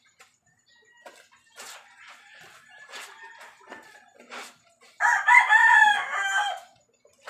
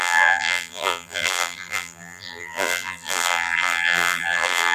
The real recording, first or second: first